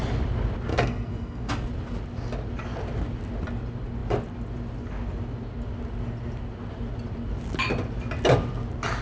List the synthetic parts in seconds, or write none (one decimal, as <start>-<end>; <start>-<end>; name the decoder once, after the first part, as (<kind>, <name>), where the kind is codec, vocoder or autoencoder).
0.7-1.5 (codec, SNAC)